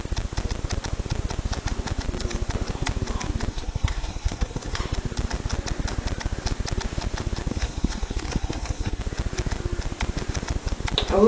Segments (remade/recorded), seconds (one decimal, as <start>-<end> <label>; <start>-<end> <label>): 0.0-3.5 recorded; 3.5-4.8 remade; 4.8-7.5 recorded; 7.5-9.0 remade; 9.0-11.3 recorded